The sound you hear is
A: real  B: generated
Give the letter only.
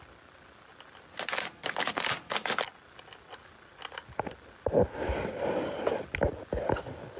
A